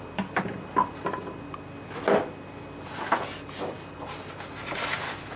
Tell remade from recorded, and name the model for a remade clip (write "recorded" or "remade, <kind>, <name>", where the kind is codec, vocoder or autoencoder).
recorded